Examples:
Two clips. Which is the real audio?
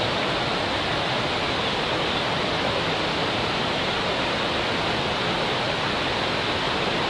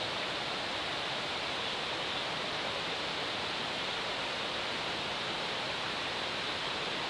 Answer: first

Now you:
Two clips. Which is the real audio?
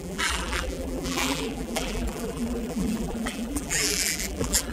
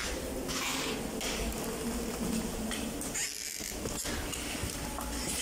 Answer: second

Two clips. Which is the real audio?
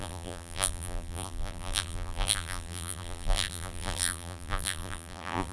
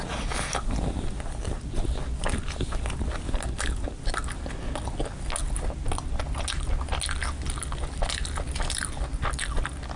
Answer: second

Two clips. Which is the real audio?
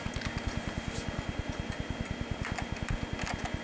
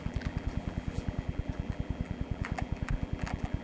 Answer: first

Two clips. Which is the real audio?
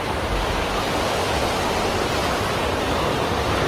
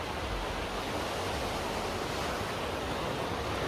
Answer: second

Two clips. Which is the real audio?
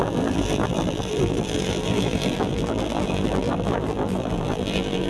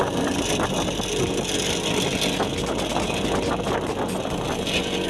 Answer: second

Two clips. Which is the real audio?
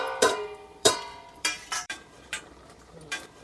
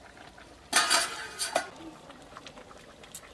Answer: second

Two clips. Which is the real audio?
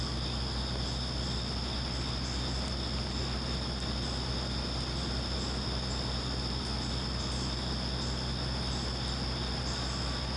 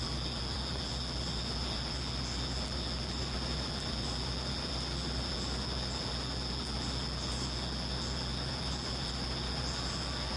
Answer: first